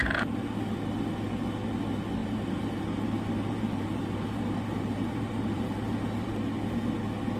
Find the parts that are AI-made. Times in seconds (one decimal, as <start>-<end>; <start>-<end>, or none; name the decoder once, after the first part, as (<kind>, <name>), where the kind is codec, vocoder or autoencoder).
0.0-0.6 (vocoder, BigVGAN v2); 2.2-6.3